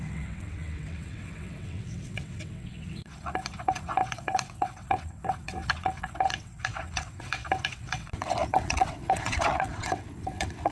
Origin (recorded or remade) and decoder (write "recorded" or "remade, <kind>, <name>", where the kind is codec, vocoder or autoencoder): remade, vocoder, WaveNeXt